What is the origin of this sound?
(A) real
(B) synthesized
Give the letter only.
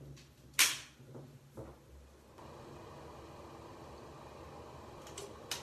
A